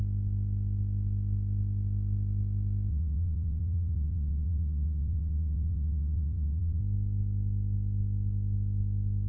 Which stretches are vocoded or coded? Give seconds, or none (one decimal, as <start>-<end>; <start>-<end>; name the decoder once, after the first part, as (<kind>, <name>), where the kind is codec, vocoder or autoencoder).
2.9-6.8 (vocoder, WaveNeXt)